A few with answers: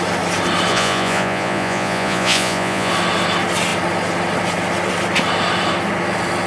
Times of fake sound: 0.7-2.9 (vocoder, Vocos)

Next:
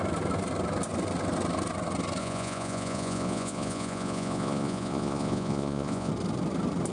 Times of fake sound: 2.2-6.1 (vocoder, Vocos)

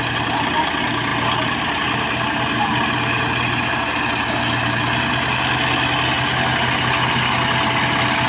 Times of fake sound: none

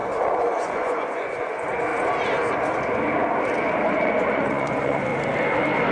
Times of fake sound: 0.0-1.9 (vocoder, Vocos); 3.9-5.1

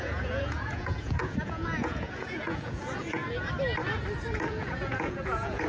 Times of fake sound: 0.0-3.2 (vocoder, Vocos); 4.5-5.7

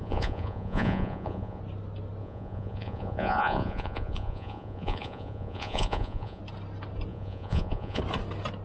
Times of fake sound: 0.0-1.6 (vocoder, Vocos); 2.2-6.4; 7.1-8.0